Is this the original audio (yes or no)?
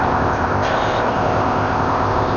no